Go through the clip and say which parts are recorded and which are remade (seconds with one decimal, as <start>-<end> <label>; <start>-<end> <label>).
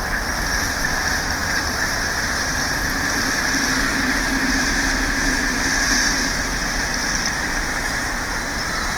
0.0-1.4 recorded; 1.4-2.4 remade; 2.4-3.9 recorded; 3.9-4.7 remade; 4.7-9.0 recorded